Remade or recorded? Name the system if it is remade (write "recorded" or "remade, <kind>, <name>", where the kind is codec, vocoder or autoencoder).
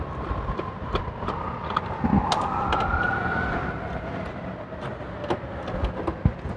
recorded